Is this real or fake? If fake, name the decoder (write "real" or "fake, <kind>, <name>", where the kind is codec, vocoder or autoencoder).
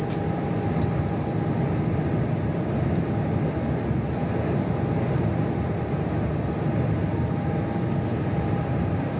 real